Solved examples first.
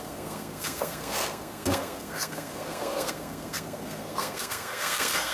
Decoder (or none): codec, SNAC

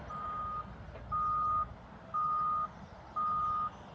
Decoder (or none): none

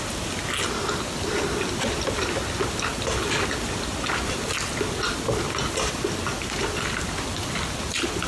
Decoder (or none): none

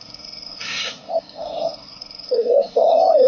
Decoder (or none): codec, SNAC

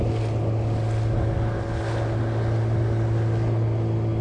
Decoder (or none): none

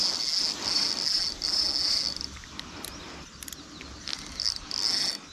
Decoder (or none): none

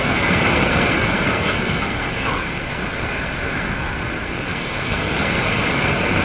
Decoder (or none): codec, SNAC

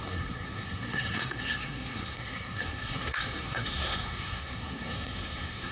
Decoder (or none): codec, SNAC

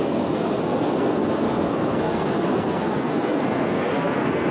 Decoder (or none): codec, SNAC